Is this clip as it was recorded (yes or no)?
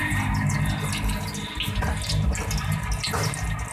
yes